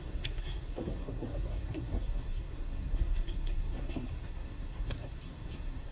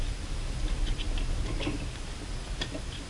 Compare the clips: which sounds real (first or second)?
second